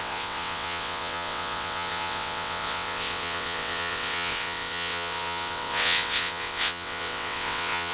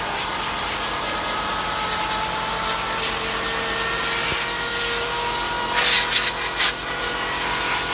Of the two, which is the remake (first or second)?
first